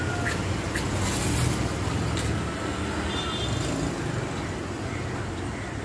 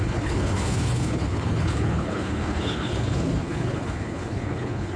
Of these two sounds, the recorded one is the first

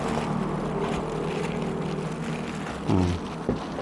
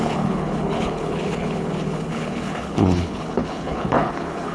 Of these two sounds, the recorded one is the first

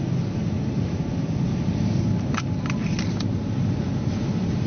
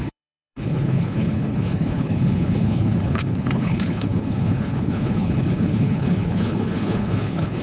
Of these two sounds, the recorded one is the first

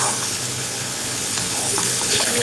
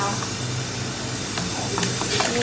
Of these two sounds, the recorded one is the second